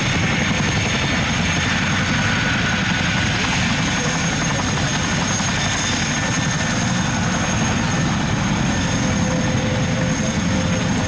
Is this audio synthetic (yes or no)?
no